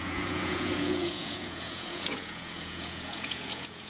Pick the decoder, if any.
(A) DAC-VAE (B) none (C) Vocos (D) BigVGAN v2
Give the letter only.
C